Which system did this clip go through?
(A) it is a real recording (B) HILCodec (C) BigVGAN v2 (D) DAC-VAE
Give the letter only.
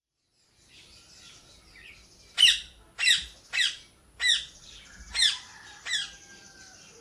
A